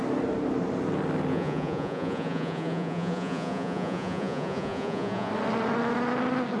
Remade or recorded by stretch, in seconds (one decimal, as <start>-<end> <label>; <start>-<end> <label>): 0.0-1.3 recorded; 1.3-5.3 remade; 5.3-6.6 recorded